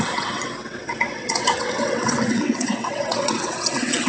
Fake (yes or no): yes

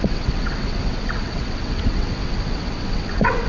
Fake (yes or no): yes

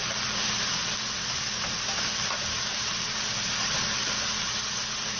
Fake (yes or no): no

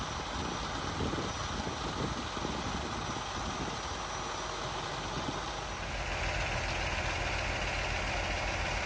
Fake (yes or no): no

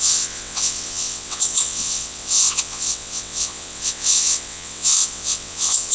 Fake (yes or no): yes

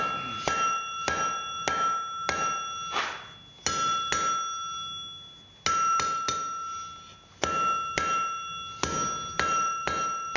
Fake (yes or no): no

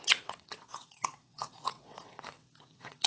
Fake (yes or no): yes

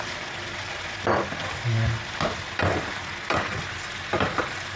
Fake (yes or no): no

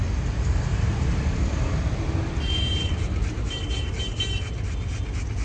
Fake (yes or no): no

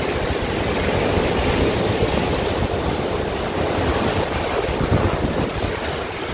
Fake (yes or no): no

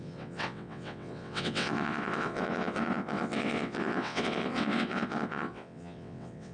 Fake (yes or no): yes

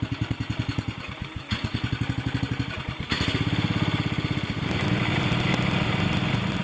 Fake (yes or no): no